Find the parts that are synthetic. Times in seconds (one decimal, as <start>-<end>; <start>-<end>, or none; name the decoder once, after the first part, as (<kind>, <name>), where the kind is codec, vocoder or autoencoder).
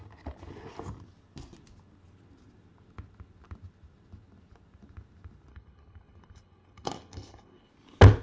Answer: 5.5-7.7 (codec, HILCodec)